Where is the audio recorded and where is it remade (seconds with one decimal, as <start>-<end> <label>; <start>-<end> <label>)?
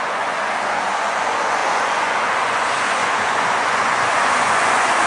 0.0-5.1 remade